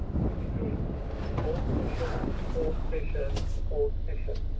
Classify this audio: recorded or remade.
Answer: recorded